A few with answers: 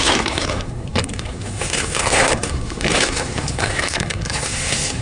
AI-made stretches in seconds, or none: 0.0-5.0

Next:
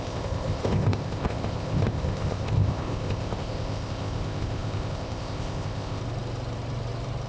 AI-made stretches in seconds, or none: 0.0-6.0

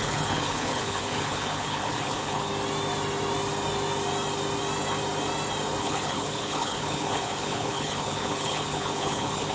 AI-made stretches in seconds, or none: 0.0-2.5; 5.8-9.5